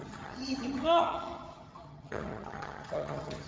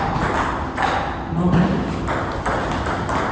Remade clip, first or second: first